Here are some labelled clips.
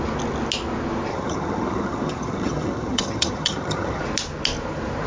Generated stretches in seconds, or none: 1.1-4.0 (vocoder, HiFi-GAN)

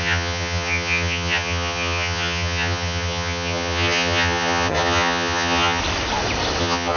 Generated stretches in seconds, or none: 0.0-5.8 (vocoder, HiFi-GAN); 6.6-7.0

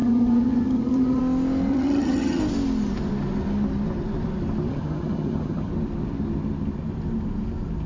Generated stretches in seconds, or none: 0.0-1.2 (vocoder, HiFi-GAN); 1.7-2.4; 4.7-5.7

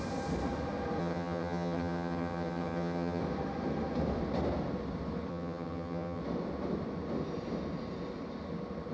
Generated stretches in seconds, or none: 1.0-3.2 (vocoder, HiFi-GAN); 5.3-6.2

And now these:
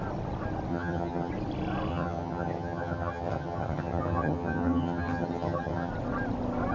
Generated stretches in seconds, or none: 0.7-1.3 (vocoder, HiFi-GAN); 1.9-5.9

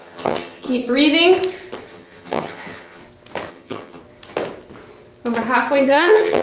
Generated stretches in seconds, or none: 0.0-0.8 (vocoder, HiFi-GAN); 1.9-3.0; 3.5-4.0; 5.8-6.4

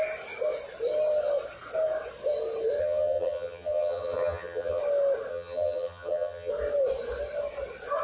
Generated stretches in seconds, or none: 2.8-4.8 (vocoder, HiFi-GAN); 5.3-6.5

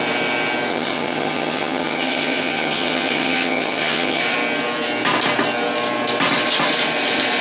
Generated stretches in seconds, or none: 0.7-4.2 (vocoder, HiFi-GAN)